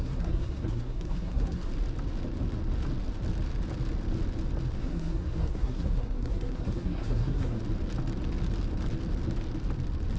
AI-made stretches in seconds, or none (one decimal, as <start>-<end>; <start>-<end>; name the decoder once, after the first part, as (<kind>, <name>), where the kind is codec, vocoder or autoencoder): 0.0-1.7 (codec, SNAC); 4.8-7.6